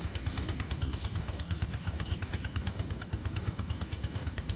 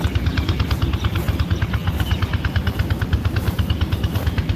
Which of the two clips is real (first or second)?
second